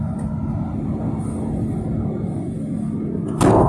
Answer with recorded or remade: recorded